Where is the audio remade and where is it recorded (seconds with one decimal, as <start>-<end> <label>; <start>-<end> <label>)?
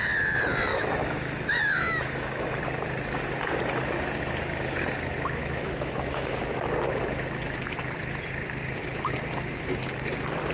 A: 0.0-0.7 recorded; 0.7-2.6 remade; 2.6-5.4 recorded; 5.4-6.4 remade; 6.4-10.5 recorded